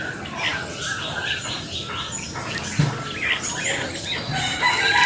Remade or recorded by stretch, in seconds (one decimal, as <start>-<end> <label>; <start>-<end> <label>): 0.0-5.1 recorded